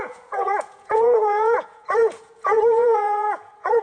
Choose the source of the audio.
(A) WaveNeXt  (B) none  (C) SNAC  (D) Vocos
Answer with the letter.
D